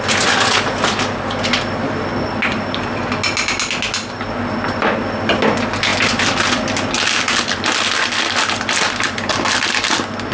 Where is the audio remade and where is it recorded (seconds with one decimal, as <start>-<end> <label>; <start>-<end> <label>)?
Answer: 0.0-10.3 recorded